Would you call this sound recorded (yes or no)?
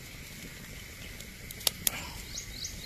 yes